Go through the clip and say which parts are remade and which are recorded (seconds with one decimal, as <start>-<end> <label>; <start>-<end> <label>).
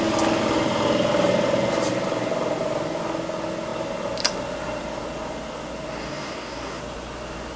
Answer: 0.0-6.0 recorded; 6.0-6.8 remade; 6.8-7.6 recorded